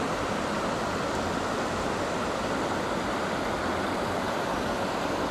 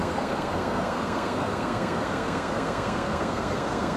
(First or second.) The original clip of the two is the first